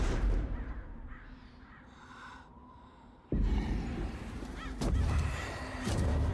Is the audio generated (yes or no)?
yes